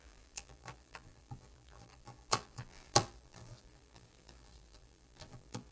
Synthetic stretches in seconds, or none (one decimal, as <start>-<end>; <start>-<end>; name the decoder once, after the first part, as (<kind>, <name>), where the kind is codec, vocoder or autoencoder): 0.0-5.7 (vocoder, BigVGAN v2)